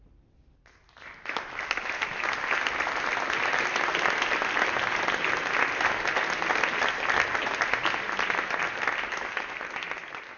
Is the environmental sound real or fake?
real